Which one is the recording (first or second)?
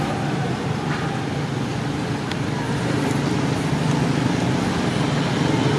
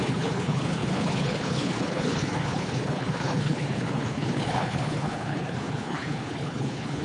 first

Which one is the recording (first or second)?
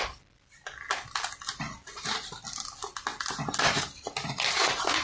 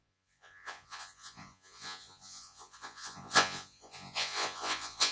first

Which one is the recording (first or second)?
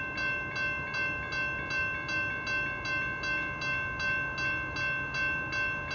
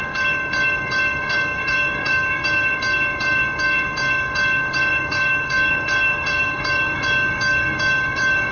first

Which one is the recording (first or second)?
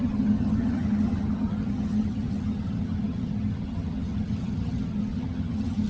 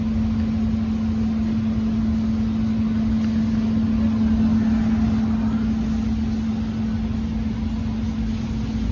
second